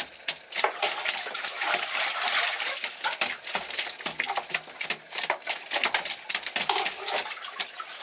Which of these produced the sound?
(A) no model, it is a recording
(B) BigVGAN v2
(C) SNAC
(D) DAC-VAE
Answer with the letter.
A